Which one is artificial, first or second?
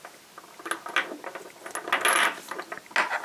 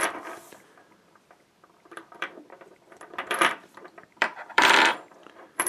second